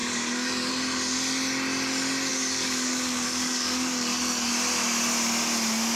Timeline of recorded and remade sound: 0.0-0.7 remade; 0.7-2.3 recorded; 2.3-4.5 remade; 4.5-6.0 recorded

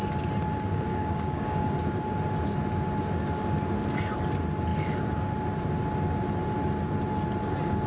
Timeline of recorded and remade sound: 0.0-0.9 recorded; 0.9-2.0 remade; 2.0-7.9 recorded